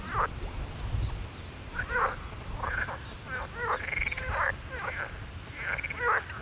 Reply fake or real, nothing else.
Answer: real